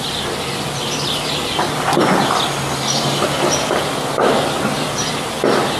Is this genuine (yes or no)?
yes